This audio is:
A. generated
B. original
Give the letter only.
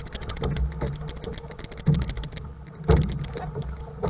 B